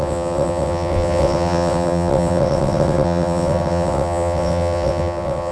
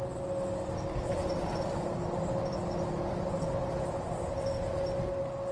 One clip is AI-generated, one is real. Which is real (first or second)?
second